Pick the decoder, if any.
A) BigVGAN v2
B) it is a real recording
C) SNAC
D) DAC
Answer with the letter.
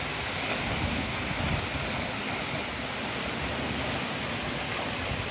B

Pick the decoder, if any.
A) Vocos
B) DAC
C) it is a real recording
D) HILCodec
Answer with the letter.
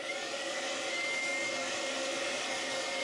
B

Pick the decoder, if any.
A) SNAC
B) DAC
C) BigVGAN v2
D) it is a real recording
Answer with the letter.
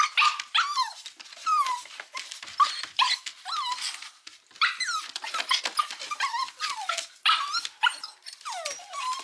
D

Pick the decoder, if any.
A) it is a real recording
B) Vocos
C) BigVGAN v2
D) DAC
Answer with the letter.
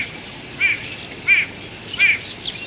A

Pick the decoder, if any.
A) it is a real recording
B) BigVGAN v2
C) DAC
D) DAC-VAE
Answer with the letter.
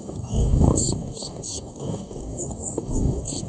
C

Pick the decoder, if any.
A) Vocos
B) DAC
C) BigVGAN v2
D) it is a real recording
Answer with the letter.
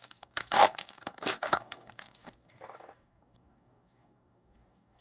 B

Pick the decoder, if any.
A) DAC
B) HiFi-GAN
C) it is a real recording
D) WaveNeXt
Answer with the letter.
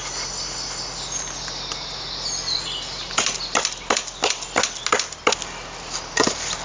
C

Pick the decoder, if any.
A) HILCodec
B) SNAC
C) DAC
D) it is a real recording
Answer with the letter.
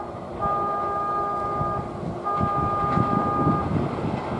D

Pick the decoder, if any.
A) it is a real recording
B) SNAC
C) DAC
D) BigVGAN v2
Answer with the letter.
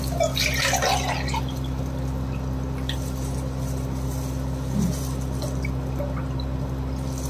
A